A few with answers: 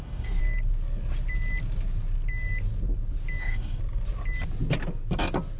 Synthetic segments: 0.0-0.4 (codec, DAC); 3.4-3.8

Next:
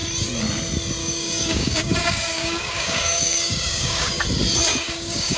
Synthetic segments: 1.0-4.2 (codec, DAC); 4.7-5.4

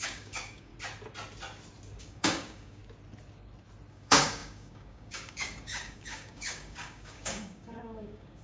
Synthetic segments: 0.0-0.7 (codec, DAC); 2.0-2.8; 3.9-8.4